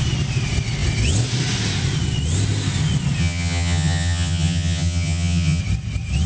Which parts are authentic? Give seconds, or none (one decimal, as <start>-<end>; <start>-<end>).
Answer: 0.0-3.2; 5.6-6.3

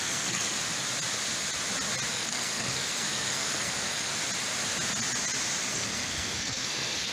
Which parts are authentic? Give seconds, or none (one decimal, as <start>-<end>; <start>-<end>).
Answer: 0.6-2.1; 4.1-5.7

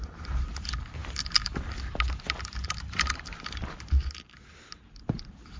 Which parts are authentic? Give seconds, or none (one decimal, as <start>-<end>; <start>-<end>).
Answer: 0.0-5.6